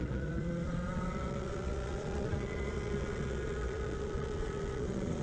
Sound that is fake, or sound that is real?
fake